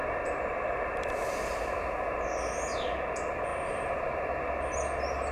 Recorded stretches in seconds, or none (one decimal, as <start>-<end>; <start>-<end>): 1.8-3.5; 4.2-5.3